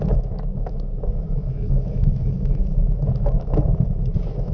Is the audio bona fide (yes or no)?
no